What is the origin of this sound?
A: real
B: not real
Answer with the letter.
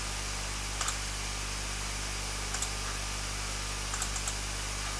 A